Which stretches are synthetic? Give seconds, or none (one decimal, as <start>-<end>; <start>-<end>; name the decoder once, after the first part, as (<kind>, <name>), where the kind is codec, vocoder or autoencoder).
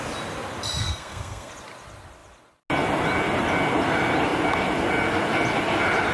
0.8-1.5 (codec, SNAC)